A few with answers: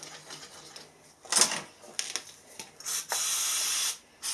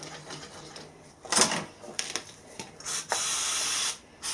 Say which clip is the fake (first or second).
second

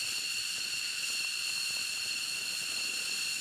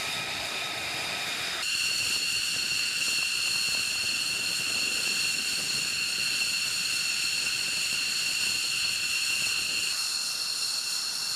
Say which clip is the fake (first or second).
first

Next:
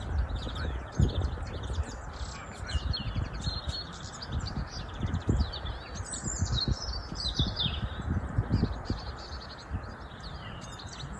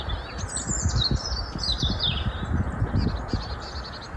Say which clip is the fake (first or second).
first